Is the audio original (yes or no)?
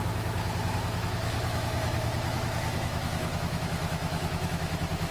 no